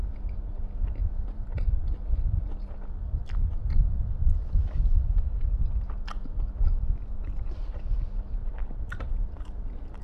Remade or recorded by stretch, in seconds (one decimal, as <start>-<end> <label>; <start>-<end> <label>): 0.0-1.0 recorded; 1.0-5.6 remade; 5.6-6.6 recorded; 6.6-7.8 remade; 7.8-8.4 recorded; 8.4-10.0 remade